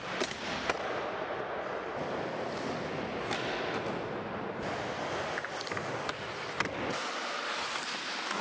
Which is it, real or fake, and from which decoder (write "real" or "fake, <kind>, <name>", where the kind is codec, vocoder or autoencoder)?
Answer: real